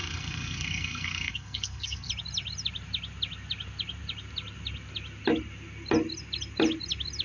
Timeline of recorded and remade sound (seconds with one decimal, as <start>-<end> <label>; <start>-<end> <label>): 0.0-2.1 remade; 2.1-7.2 recorded